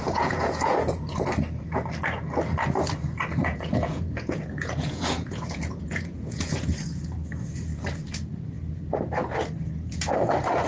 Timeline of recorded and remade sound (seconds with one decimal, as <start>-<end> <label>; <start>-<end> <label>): 0.0-1.0 remade; 1.0-3.4 recorded; 3.4-6.7 remade; 6.7-10.7 recorded